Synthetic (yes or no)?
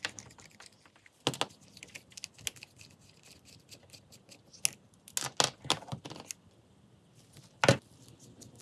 no